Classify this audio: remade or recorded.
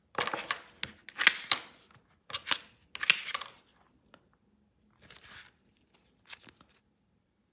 recorded